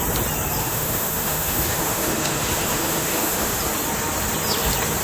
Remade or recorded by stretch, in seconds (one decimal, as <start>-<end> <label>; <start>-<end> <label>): 0.0-0.6 recorded; 0.6-3.6 remade; 3.6-5.0 recorded